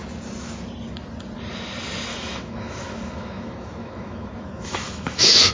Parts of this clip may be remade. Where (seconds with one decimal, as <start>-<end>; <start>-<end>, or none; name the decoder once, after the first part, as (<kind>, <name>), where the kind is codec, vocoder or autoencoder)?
2.1-5.5 (autoencoder, DAC-VAE)